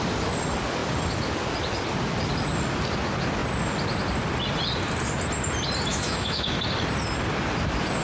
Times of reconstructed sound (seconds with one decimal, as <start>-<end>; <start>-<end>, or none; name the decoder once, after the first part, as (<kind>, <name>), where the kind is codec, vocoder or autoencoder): 5.9-6.6 (autoencoder, DAC-VAE)